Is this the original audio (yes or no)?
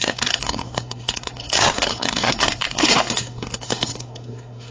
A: no